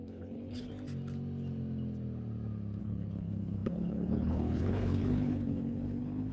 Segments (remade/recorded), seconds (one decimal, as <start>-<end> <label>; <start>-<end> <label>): 0.0-0.7 remade; 0.7-2.8 recorded; 2.8-6.3 remade